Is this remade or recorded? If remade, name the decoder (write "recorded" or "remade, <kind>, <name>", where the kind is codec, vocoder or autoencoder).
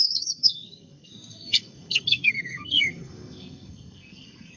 remade, codec, SNAC